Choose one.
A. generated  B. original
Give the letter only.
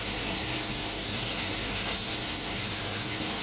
A